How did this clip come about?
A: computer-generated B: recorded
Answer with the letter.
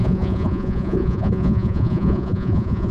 A